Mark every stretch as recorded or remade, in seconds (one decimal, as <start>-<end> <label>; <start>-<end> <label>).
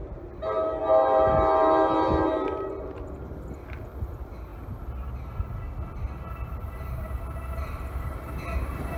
0.0-9.0 recorded